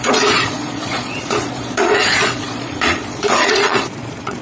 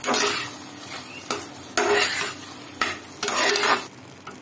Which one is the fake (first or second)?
first